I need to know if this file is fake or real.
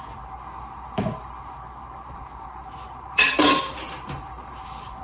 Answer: fake